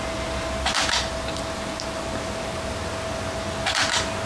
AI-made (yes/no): no